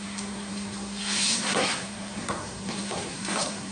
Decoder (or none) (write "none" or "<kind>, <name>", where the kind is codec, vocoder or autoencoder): codec, SNAC